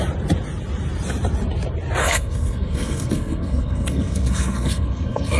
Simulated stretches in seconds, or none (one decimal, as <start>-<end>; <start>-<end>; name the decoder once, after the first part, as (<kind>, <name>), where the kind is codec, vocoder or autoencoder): 2.0-5.4 (codec, SNAC)